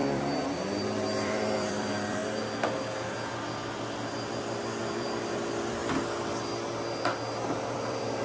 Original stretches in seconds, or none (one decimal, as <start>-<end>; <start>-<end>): 2.2-4.8; 5.8-7.6